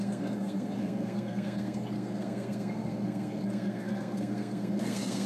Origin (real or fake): fake